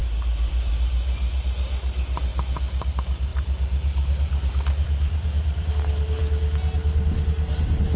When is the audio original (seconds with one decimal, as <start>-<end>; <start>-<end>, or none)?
1.4-3.3; 5.7-8.0